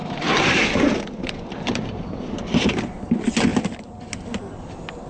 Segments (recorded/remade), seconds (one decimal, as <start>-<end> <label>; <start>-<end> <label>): 0.0-2.8 remade; 2.8-5.1 recorded